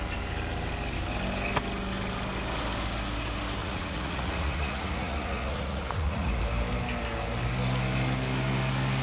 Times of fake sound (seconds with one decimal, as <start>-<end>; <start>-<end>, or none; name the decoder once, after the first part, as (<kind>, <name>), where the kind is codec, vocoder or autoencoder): 3.6-6.4 (vocoder, Vocos)